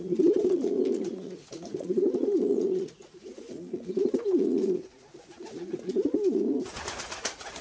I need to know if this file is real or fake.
fake